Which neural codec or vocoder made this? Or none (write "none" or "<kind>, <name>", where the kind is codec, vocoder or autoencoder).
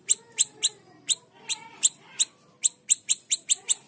none